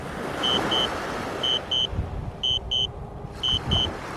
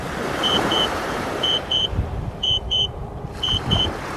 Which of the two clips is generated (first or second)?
second